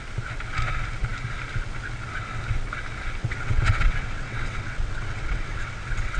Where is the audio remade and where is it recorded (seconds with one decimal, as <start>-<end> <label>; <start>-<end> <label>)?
0.0-3.2 recorded; 3.2-6.2 remade